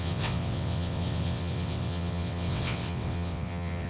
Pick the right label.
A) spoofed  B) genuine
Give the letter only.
A